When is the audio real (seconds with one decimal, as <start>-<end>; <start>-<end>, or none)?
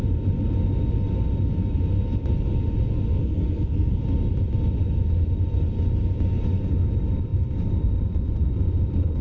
0.0-3.2; 4.0-9.2